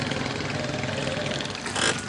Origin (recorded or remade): recorded